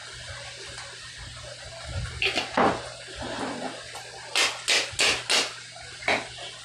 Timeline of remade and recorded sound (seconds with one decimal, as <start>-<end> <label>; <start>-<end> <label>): 0.0-6.6 recorded